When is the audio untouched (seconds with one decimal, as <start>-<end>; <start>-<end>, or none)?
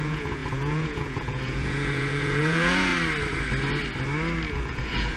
2.9-4.5